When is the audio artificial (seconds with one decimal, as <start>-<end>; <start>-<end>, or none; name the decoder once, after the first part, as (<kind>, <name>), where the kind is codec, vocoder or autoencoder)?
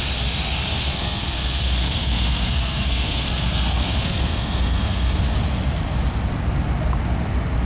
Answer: 0.8-5.2 (codec, SNAC)